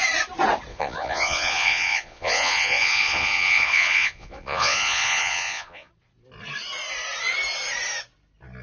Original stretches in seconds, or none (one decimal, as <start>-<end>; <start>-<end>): 0.0-0.7; 5.9-8.6